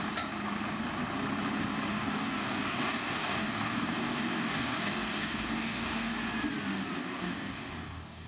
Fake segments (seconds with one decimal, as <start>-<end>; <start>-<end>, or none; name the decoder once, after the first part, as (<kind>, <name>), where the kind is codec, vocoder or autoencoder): 1.9-6.1 (codec, DAC); 7.0-8.3